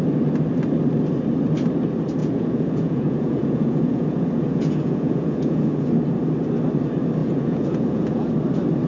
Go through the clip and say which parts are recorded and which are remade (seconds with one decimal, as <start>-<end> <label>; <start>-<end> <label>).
0.0-2.2 recorded; 2.2-5.9 remade; 5.9-7.2 recorded; 7.2-8.3 remade; 8.3-8.9 recorded